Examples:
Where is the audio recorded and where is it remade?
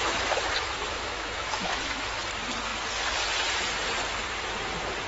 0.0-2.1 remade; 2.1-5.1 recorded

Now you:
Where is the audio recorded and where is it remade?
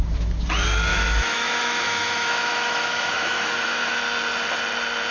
0.0-0.9 recorded; 0.9-4.0 remade; 4.0-5.1 recorded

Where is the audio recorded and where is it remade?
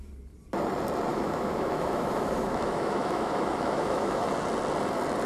0.0-1.1 recorded; 1.1-4.3 remade; 4.3-5.3 recorded